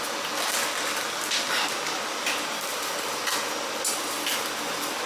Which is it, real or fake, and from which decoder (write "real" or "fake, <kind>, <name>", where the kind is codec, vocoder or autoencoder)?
real